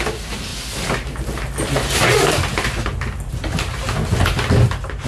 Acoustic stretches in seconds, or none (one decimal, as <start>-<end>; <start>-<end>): 0.0-5.1